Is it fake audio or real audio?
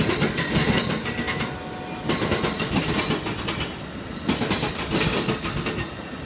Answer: real